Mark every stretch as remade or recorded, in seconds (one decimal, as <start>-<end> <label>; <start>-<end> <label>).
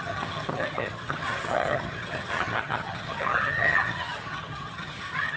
0.0-5.4 remade